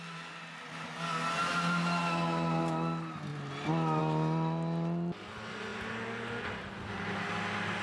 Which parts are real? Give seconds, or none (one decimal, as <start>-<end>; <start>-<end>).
0.0-7.8